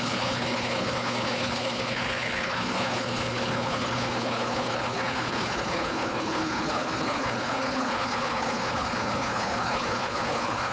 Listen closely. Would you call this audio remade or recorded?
remade